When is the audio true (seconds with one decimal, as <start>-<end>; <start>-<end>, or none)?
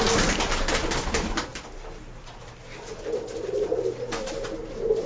0.0-5.1